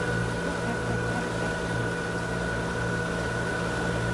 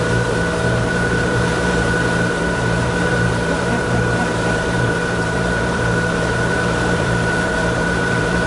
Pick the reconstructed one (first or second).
second